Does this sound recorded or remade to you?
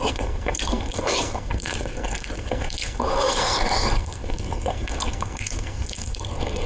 remade